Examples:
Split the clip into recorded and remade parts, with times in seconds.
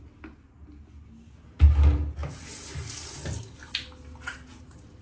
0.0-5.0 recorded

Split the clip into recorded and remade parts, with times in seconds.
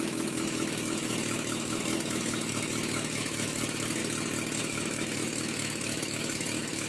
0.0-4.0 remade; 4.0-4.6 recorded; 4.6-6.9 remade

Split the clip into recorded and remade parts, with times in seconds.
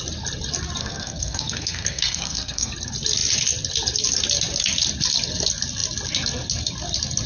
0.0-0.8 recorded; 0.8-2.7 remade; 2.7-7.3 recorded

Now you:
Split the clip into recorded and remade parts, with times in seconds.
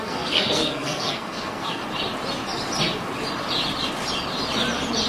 0.0-1.8 remade; 1.8-5.1 recorded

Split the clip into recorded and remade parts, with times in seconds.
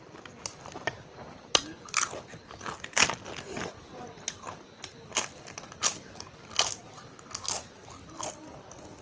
0.0-9.0 recorded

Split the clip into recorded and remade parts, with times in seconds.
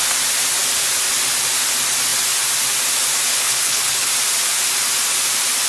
0.0-3.3 recorded; 3.3-4.1 remade; 4.1-5.7 recorded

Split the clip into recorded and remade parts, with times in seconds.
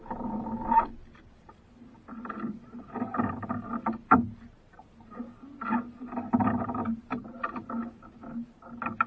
0.0-9.1 recorded